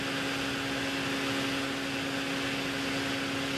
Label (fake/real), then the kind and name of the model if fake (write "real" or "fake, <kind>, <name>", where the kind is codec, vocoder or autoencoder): real